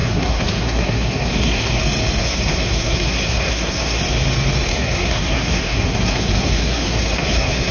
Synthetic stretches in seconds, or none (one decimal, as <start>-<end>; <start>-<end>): 0.0-1.8; 2.2-4.0; 4.7-7.7